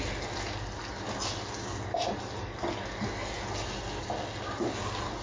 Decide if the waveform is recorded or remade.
recorded